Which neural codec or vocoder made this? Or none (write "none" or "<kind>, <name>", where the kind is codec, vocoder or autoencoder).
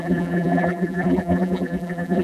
vocoder, BigVGAN v2